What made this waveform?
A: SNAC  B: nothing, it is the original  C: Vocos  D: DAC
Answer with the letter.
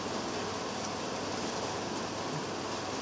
B